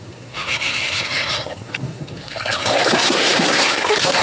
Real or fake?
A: fake